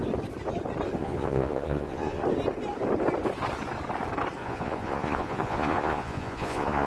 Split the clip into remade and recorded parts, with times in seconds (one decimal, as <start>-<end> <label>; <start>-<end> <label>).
0.0-1.0 recorded; 1.0-2.2 remade; 2.2-4.4 recorded; 4.4-6.9 remade